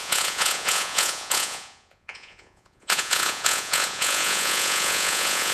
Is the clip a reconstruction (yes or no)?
yes